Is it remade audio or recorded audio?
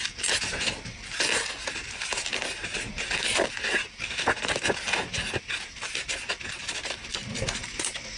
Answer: recorded